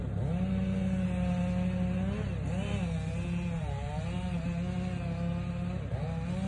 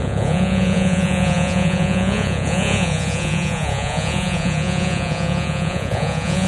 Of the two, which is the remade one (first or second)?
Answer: second